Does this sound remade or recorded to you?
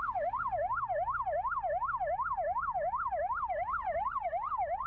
recorded